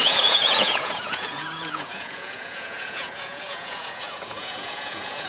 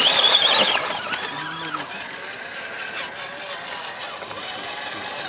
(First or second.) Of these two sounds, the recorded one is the second